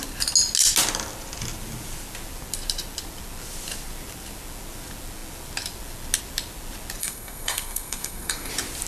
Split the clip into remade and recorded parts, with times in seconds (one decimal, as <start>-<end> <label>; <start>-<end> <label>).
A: 0.0-7.0 recorded; 7.0-8.5 remade; 8.5-8.9 recorded